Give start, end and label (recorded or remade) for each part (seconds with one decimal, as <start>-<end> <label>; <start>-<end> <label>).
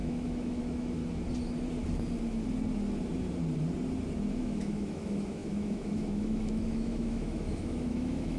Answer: 0.0-1.0 remade; 1.0-4.3 recorded; 4.3-8.4 remade